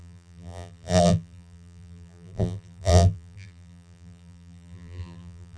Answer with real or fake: fake